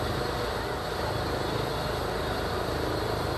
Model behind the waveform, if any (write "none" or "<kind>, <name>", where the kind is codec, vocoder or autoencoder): none